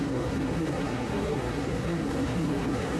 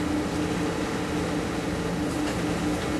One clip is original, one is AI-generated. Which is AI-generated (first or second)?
first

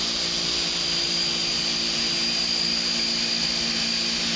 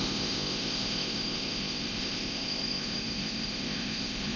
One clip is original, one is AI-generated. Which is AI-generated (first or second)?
second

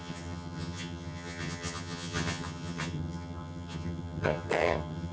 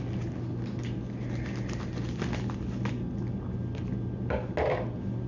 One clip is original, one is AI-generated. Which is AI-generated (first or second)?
first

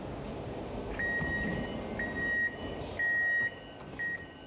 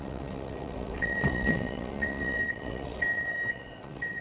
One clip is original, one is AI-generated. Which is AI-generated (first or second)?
second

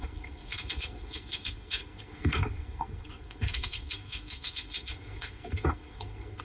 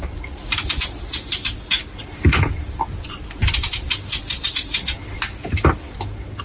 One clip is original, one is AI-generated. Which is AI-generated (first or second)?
first